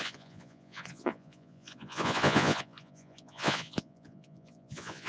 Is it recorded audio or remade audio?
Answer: remade